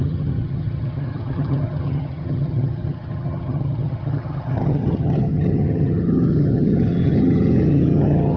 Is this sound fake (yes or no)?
yes